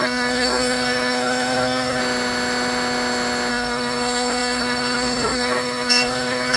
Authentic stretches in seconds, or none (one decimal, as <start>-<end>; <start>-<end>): 2.0-3.5